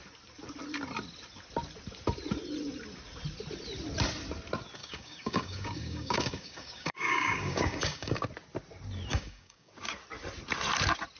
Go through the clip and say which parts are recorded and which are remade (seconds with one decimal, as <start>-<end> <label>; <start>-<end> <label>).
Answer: 0.0-4.8 recorded; 4.8-8.2 remade; 8.2-9.1 recorded; 9.1-9.7 remade; 9.7-11.2 recorded